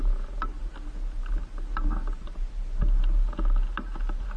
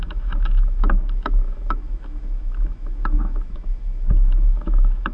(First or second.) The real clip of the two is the first